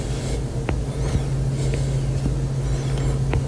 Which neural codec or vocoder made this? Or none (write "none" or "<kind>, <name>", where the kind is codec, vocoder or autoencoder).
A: none